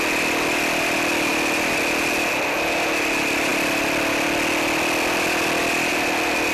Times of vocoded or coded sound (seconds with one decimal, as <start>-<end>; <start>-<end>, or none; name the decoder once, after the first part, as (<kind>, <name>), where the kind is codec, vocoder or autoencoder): none